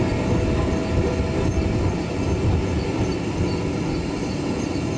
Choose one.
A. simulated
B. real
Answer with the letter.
B